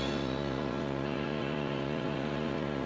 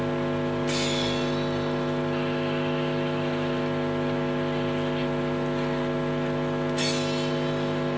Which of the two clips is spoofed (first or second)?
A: first